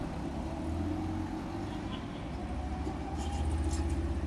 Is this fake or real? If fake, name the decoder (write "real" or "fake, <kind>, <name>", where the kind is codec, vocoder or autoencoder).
real